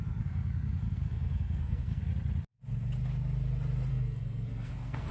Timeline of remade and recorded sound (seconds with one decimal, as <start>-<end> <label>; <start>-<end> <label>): 0.0-2.0 remade; 2.0-3.9 recorded; 3.9-5.1 remade